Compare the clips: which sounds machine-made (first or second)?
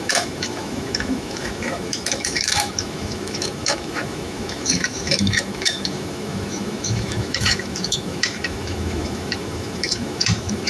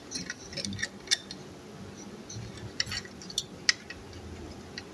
first